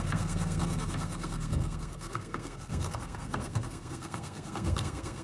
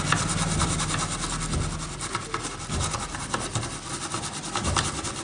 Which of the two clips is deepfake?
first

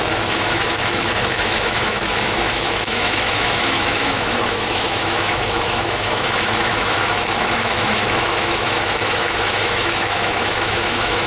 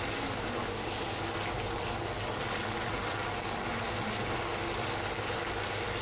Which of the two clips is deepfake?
first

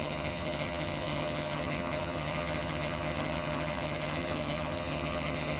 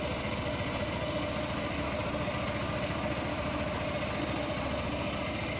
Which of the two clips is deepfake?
first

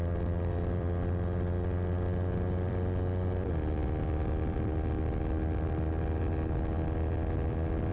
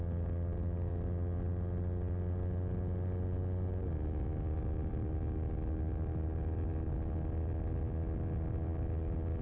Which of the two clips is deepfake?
first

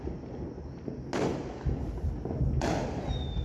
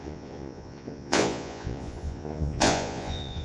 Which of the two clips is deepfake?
second